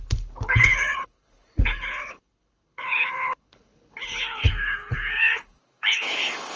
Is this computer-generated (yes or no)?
yes